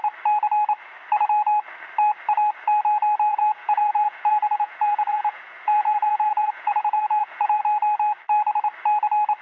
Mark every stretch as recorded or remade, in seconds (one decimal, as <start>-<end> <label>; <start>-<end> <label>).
0.0-3.3 recorded; 3.3-7.6 remade; 7.6-9.4 recorded